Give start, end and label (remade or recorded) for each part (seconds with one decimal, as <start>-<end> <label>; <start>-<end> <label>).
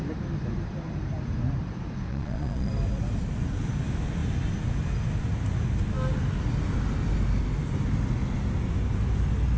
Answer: 0.0-2.1 recorded; 2.1-2.7 remade; 2.7-9.6 recorded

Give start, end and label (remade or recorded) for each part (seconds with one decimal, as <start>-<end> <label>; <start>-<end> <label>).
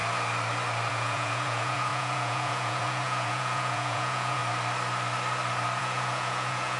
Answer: 0.0-0.9 recorded; 0.9-4.4 remade; 4.4-5.8 recorded; 5.8-6.8 remade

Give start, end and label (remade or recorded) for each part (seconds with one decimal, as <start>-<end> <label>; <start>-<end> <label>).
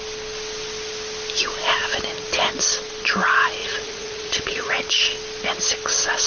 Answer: 0.0-3.6 recorded; 3.6-4.7 remade; 4.7-6.3 recorded